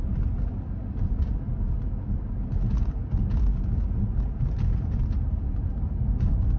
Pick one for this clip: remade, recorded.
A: recorded